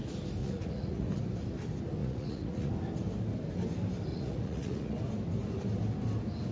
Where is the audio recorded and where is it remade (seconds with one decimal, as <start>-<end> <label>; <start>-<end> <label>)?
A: 0.0-0.4 recorded; 0.4-1.2 remade; 1.2-2.0 recorded; 2.0-2.7 remade; 2.7-4.1 recorded; 4.1-5.0 remade; 5.0-6.5 recorded